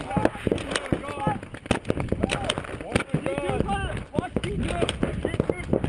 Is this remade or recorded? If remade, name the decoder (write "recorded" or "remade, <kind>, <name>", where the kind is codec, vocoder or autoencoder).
recorded